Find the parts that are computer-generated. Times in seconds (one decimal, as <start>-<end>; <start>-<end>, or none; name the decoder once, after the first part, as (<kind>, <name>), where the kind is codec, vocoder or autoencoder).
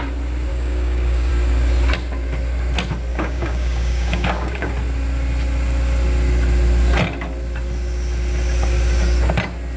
0.5-1.3 (codec, DAC); 3.1-4.7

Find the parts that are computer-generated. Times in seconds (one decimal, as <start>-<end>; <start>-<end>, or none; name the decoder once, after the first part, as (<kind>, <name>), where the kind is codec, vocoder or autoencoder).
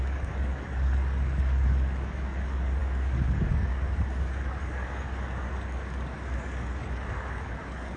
0.0-8.0 (codec, DAC)